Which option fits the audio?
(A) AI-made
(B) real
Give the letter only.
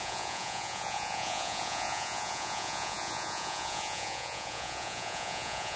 A